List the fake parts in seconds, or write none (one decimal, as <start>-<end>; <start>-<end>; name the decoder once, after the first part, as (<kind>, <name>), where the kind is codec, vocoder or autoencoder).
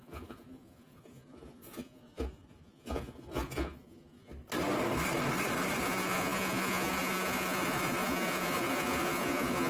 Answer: 0.0-4.3 (vocoder, Vocos); 5.8-9.7